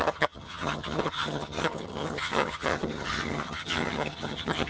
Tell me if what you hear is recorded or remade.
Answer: remade